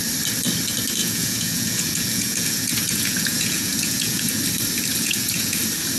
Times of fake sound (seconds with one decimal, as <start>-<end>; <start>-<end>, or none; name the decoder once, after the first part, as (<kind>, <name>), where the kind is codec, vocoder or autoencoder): 1.0-4.4 (vocoder, Vocos); 4.9-5.6